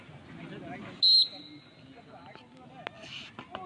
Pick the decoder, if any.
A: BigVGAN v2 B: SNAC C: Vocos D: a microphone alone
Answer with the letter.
D